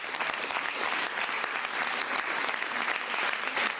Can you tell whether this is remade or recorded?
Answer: remade